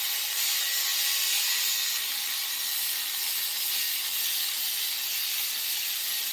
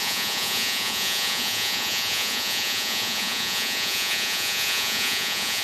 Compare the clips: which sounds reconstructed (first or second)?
second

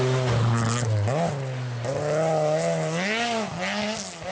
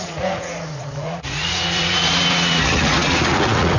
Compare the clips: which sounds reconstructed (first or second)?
second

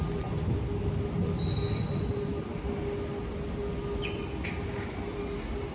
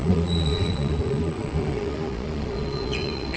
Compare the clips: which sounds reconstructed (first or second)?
second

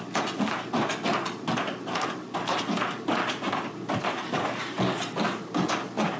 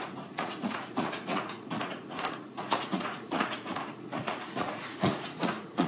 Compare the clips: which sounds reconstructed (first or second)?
second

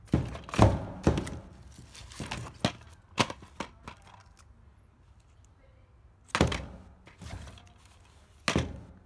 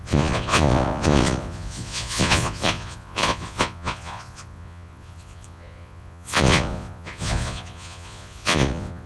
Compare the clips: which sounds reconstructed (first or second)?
second